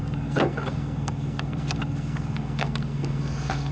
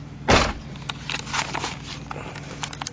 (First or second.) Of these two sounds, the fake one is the first